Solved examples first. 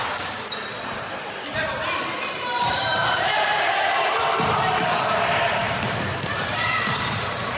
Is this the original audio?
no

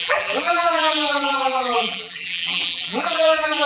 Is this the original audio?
no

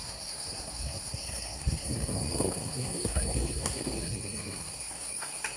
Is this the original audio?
no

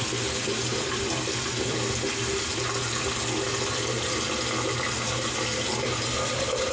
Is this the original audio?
yes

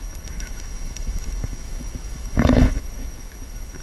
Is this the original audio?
no